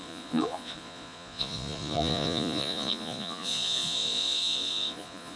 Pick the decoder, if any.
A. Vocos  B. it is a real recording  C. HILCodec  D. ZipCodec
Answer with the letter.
A